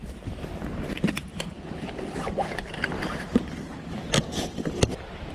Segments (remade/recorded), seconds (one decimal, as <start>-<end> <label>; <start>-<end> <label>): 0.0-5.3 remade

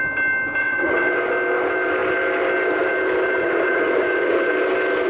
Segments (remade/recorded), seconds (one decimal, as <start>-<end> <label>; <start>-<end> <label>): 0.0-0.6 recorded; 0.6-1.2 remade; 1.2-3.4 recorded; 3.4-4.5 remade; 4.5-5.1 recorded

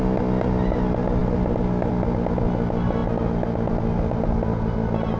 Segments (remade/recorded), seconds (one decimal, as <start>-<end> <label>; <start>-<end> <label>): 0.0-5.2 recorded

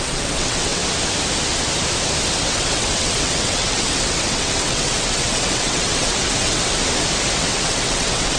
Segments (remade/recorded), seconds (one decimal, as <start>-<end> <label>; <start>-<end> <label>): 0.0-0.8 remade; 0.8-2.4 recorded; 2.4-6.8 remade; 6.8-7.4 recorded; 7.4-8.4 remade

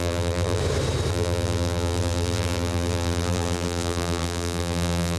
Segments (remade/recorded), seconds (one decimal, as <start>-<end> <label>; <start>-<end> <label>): 0.0-0.6 remade; 0.6-1.1 recorded; 1.1-5.2 remade

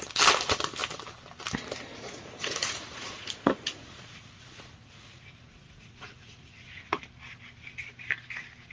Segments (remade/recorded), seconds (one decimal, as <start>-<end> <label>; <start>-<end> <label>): 0.0-1.9 recorded; 1.9-7.0 remade; 7.0-8.7 recorded

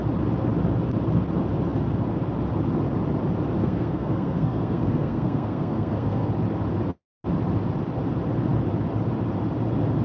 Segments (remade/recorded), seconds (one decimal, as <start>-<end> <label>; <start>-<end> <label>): 0.0-3.6 recorded; 3.6-6.3 remade; 6.3-10.0 recorded